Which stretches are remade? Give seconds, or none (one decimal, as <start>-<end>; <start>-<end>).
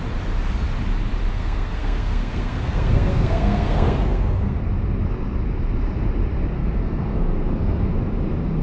1.3-4.6; 6.6-7.9